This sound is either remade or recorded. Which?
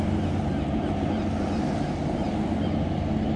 recorded